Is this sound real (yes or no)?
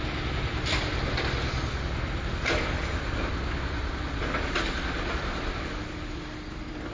yes